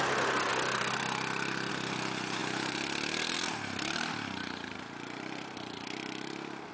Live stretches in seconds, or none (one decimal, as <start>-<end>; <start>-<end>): 0.0-2.4